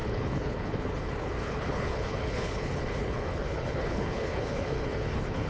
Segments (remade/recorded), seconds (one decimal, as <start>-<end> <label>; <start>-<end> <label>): 0.0-5.5 remade